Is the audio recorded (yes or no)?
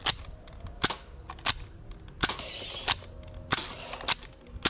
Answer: yes